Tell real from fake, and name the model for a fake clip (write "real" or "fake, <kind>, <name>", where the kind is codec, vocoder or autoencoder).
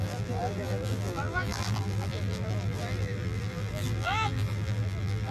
fake, vocoder, BigVGAN v2